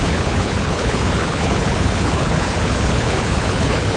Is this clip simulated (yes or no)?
yes